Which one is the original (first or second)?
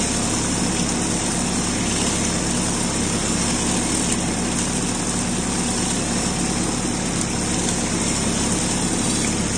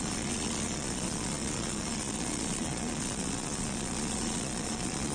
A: first